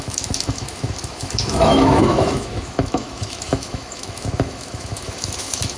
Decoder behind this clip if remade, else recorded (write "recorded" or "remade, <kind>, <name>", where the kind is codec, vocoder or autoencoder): remade, autoencoder, DAC-VAE